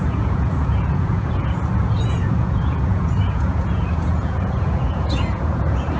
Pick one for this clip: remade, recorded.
remade